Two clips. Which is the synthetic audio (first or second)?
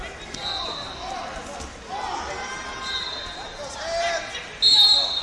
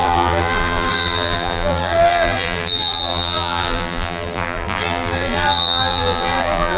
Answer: second